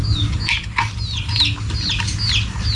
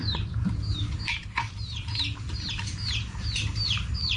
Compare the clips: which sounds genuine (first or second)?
first